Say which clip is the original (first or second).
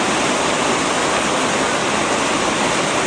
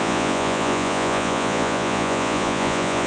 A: first